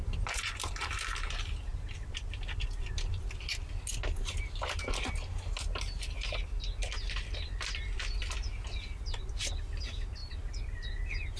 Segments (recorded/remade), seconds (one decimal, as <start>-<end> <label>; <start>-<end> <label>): 0.0-10.2 recorded; 10.2-10.9 remade; 10.9-11.4 recorded